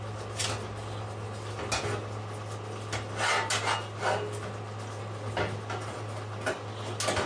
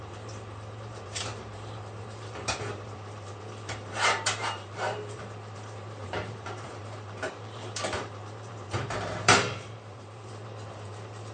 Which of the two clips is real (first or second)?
first